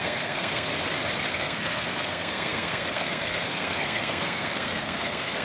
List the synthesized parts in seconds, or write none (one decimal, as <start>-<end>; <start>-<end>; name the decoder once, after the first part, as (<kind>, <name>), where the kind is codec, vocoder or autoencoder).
0.0-0.7 (codec, SNAC); 1.3-5.4